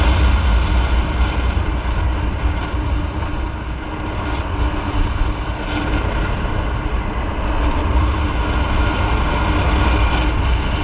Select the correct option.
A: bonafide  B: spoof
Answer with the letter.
A